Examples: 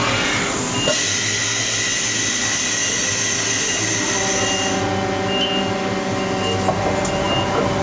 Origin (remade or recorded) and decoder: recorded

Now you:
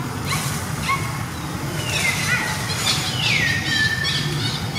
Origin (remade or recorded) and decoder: recorded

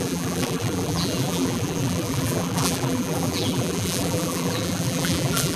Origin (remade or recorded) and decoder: remade, vocoder, BigVGAN v2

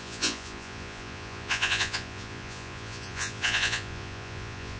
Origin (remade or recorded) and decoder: remade, vocoder, Vocos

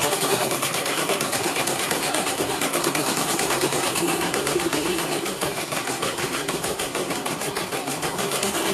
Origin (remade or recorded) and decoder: remade, codec, SNAC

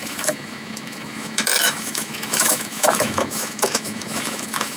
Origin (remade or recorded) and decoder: remade, autoencoder, DAC-VAE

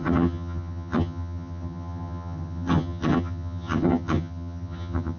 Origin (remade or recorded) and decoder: remade, vocoder, HiFi-GAN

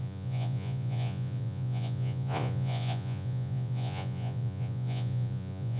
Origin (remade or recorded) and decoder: remade, vocoder, Vocos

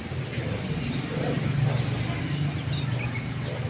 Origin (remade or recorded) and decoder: recorded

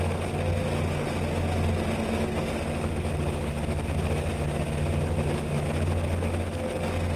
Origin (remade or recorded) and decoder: recorded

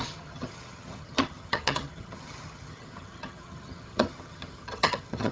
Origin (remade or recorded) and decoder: remade, vocoder, HiFi-GAN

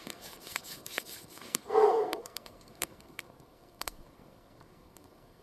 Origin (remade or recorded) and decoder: remade, codec, SNAC